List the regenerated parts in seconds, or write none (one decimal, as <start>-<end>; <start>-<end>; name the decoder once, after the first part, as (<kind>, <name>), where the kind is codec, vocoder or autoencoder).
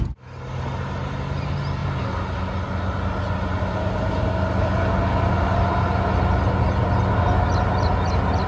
none